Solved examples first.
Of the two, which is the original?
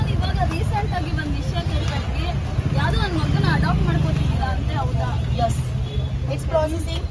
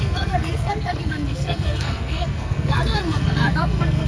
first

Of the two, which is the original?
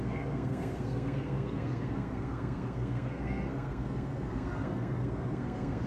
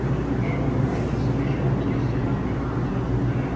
second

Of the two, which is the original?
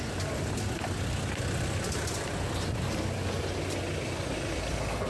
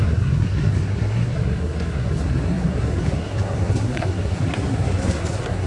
first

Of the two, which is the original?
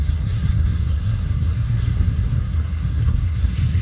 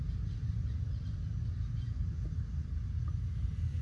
second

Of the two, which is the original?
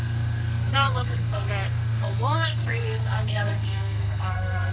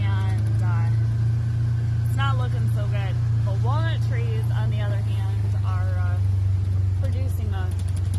second